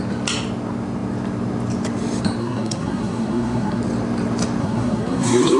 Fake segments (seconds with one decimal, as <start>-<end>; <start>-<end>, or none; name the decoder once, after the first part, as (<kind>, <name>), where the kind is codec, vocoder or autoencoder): 2.4-3.8 (codec, SNAC); 4.6-5.6